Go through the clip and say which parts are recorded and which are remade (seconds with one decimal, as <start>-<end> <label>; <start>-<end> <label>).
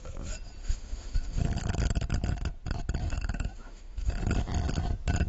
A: 0.0-0.6 recorded; 0.6-1.4 remade; 1.4-3.0 recorded; 3.0-4.1 remade; 4.1-5.3 recorded